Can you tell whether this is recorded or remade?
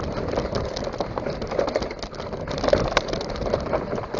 recorded